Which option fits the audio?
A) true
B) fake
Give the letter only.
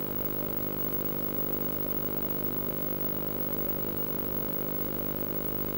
B